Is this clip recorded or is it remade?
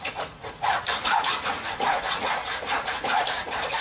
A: remade